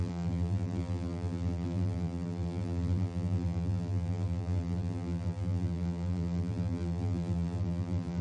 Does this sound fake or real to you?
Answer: fake